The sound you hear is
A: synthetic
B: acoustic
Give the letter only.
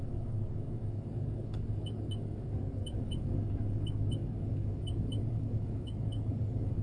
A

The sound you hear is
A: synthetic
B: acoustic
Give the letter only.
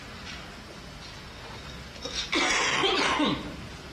B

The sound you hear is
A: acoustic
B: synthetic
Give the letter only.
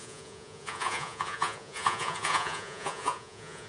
B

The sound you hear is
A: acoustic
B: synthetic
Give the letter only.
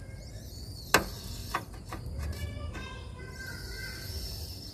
A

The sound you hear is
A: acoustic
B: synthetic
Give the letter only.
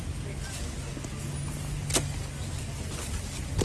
A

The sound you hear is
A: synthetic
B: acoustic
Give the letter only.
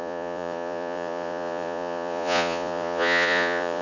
A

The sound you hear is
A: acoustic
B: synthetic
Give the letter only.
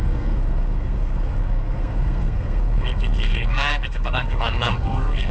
B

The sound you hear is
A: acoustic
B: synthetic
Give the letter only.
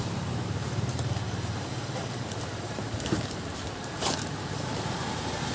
B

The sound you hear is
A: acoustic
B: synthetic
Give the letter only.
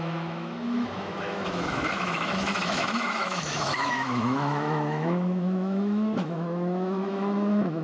B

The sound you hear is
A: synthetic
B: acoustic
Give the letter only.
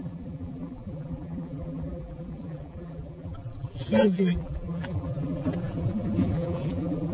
A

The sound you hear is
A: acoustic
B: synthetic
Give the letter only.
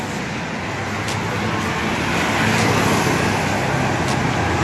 A